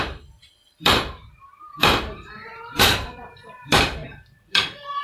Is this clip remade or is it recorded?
remade